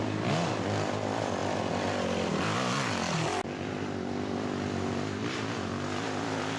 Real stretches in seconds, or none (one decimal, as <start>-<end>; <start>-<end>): 0.0-6.6